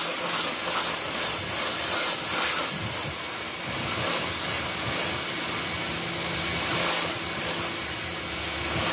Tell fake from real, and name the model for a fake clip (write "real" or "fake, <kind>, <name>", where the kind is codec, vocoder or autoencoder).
real